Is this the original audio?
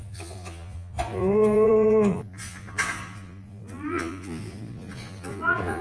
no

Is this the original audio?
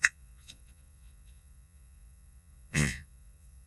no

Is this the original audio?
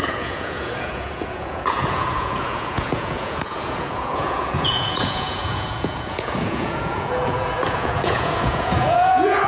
no